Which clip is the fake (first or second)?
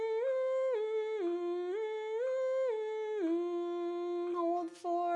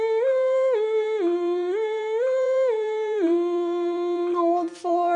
second